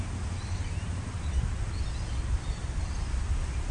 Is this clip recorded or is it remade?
recorded